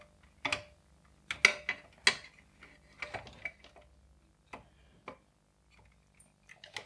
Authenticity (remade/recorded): recorded